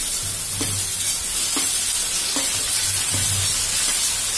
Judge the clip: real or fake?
real